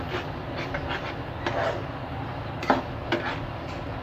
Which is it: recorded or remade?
recorded